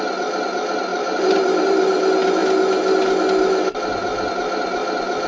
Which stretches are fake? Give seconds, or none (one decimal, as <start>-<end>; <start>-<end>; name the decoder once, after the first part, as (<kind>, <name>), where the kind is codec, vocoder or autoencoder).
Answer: 0.9-2.0 (vocoder, BigVGAN v2)